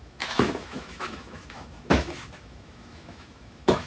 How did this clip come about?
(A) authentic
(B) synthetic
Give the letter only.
B